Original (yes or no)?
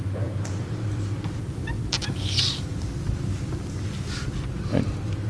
yes